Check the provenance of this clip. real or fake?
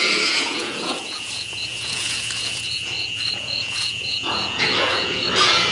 fake